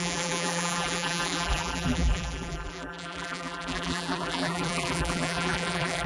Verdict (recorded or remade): remade